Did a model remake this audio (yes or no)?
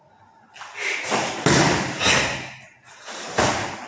no